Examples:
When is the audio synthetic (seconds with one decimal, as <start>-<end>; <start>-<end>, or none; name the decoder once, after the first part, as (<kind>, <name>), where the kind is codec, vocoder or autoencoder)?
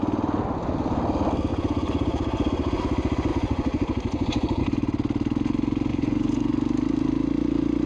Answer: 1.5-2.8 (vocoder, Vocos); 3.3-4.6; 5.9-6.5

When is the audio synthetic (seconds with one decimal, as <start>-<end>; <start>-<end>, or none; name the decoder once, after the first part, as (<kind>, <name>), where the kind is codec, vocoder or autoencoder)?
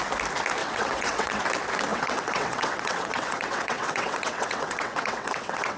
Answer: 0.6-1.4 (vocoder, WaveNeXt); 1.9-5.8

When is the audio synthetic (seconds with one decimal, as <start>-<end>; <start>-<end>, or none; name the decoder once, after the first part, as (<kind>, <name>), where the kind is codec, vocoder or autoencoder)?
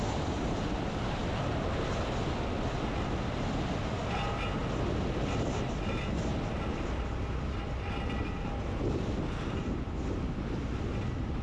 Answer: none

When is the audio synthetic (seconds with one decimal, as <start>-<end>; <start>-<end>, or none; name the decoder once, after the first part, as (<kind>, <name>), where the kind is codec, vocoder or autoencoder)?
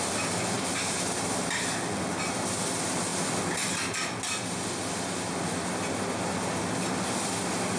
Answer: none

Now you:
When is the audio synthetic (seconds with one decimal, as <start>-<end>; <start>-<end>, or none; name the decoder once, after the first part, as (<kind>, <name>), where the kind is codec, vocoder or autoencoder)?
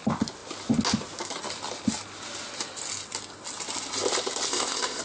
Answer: 4.5-5.0 (codec, ZipCodec)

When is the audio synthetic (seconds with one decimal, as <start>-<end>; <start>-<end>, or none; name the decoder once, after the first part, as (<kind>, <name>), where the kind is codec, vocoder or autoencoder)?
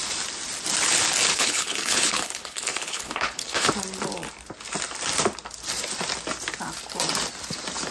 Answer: 1.3-3.7 (codec, HILCodec)